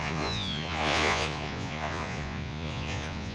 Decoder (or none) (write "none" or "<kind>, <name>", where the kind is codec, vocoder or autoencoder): vocoder, Vocos